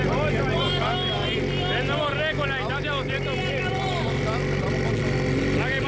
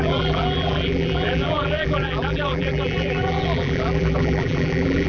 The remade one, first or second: second